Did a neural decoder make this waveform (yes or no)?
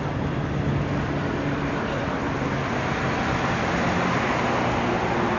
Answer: no